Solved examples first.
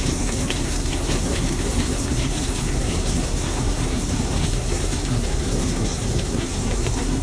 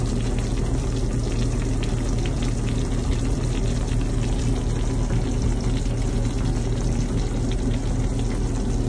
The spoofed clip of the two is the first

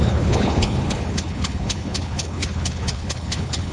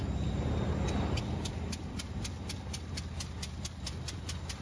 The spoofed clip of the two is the first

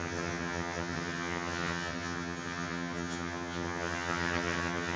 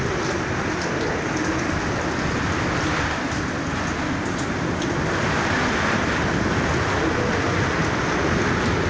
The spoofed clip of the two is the first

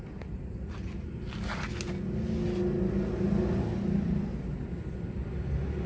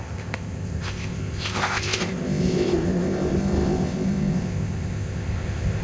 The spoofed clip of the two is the second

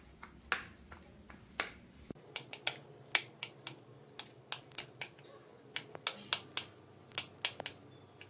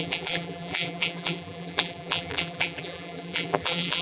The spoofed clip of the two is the second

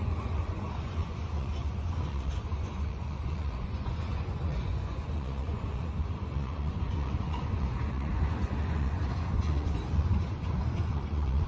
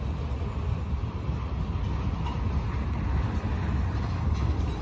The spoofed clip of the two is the first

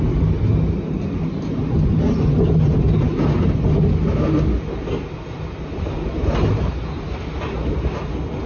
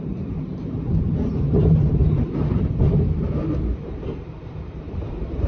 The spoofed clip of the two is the second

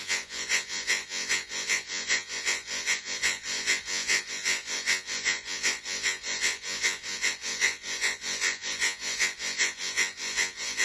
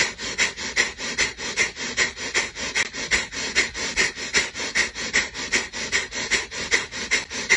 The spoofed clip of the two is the first